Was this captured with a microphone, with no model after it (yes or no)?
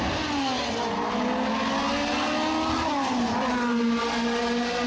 yes